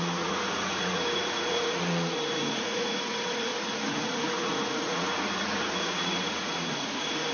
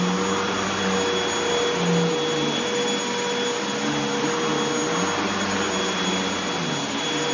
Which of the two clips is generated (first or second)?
first